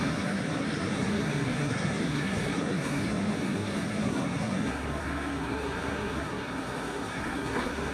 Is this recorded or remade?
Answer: remade